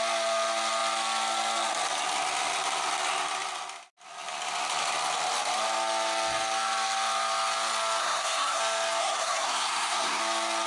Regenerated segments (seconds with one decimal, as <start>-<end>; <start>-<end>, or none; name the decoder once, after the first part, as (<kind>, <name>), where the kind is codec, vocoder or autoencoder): 8.0-8.6 (codec, SNAC); 9.0-10.2